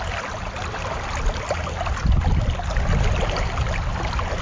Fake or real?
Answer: real